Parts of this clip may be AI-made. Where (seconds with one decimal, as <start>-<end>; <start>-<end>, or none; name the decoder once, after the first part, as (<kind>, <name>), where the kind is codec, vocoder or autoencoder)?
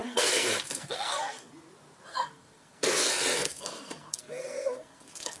0.0-1.5 (codec, SNAC); 2.1-5.4